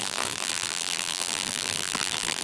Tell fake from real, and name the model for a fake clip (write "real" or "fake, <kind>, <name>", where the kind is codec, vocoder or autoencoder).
fake, vocoder, BigVGAN v2